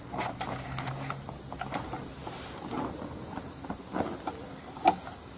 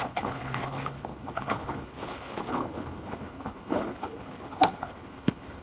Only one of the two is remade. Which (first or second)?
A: second